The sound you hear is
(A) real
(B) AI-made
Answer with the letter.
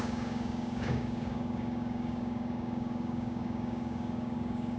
B